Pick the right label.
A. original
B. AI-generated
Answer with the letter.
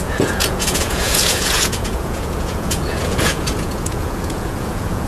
B